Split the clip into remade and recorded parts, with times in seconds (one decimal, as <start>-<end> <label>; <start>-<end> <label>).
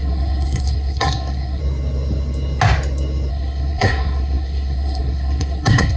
0.0-1.6 remade; 1.6-3.3 recorded; 3.3-6.0 remade